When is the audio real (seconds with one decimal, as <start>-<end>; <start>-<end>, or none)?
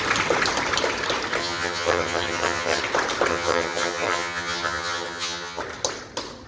0.0-1.4; 2.8-3.3; 5.6-6.5